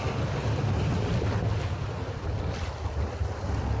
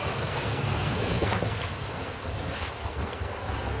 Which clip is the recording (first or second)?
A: first